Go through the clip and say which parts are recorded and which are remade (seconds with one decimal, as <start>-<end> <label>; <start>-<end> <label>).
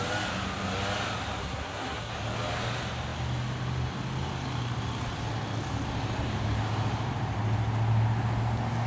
0.0-1.4 recorded; 1.4-2.1 remade; 2.1-8.9 recorded